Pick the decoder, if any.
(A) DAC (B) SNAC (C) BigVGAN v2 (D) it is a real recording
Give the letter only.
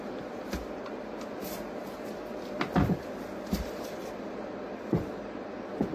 D